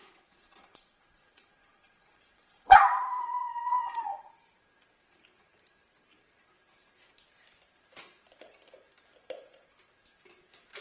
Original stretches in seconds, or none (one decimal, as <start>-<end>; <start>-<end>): 4.3-10.8

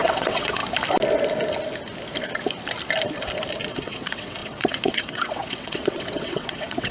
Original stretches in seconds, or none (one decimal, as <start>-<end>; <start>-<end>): 0.6-3.7

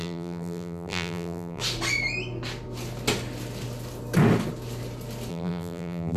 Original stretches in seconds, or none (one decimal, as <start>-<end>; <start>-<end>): 1.6-5.3